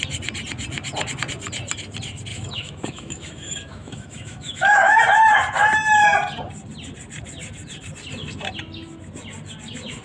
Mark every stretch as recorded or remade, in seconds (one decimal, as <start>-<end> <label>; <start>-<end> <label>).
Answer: 0.0-2.3 recorded; 2.3-5.0 remade; 5.0-10.0 recorded